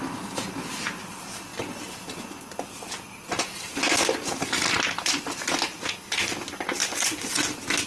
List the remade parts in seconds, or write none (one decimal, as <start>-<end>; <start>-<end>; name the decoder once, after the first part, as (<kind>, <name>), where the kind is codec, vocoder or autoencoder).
6.8-7.4 (vocoder, Vocos)